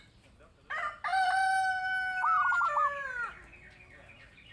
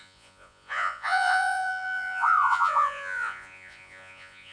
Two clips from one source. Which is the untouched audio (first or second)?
first